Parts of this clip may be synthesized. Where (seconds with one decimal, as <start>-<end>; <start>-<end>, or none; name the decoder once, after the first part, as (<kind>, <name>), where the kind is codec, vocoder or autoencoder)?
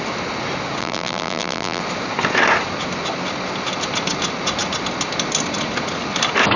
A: 0.8-1.8 (vocoder, BigVGAN v2)